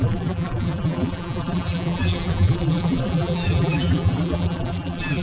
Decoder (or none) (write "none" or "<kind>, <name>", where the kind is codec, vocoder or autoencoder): vocoder, BigVGAN v2